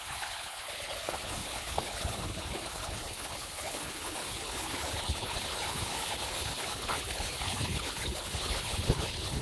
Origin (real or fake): fake